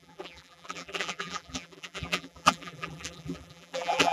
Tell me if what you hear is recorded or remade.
remade